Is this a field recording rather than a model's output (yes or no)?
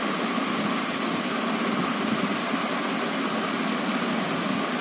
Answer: yes